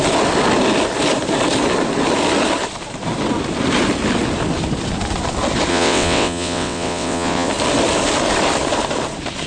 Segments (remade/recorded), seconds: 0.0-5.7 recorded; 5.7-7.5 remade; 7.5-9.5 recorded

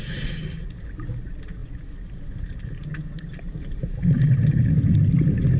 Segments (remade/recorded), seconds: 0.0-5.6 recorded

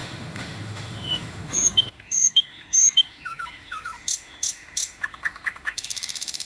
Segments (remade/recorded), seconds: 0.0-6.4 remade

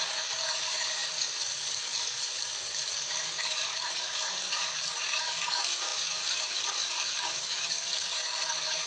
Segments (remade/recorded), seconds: 0.0-8.9 remade